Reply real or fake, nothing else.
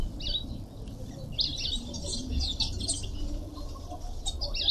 real